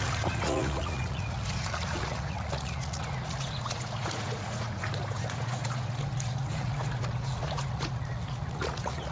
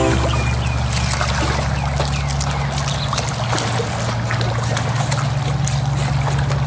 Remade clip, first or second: first